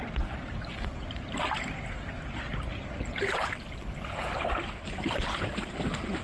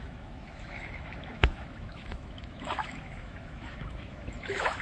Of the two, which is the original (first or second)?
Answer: first